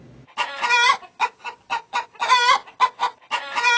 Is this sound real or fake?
real